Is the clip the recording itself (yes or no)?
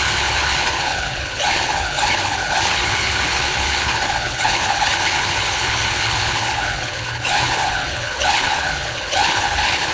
no